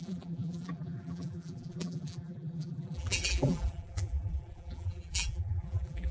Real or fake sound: fake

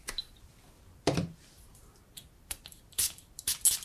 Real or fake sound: real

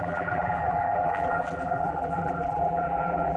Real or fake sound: fake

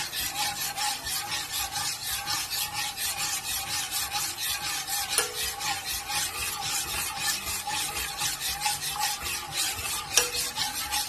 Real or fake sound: real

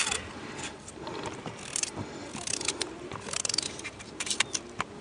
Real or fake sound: fake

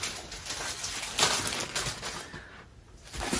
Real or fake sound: real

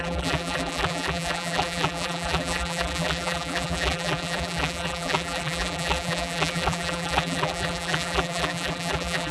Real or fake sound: fake